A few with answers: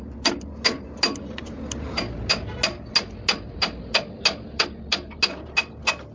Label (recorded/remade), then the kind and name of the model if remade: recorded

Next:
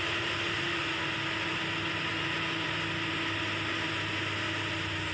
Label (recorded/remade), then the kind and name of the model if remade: recorded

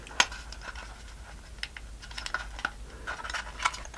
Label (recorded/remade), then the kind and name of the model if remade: recorded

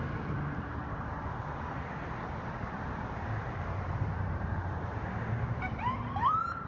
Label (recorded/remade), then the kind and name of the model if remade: remade, vocoder, BigVGAN v2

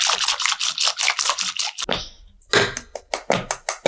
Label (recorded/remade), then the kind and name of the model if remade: recorded